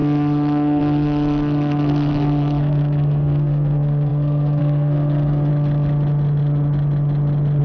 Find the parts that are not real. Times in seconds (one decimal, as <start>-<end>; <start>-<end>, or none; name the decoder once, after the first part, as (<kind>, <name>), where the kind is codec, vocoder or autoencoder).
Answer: 0.0-5.5 (codec, SNAC)